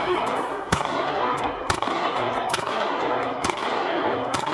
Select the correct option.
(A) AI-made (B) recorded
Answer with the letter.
A